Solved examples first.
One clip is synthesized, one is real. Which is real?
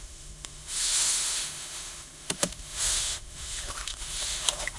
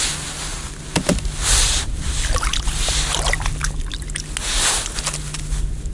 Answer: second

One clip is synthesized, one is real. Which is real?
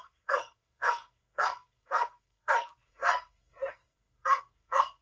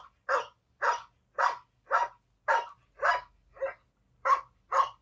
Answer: second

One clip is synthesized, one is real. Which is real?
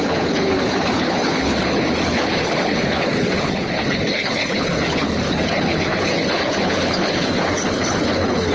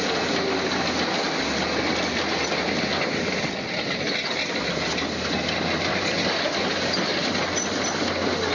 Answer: second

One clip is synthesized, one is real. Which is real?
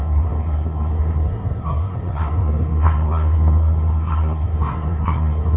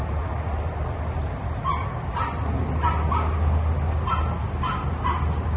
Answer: second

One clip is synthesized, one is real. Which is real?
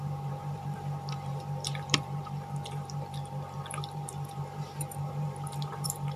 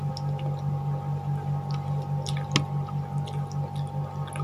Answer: second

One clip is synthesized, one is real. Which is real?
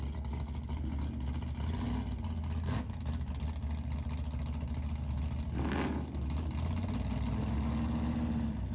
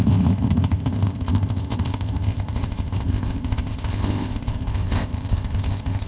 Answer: first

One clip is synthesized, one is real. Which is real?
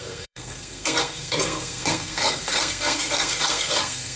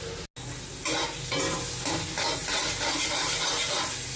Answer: second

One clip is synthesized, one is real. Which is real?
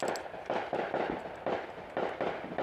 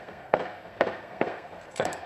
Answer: first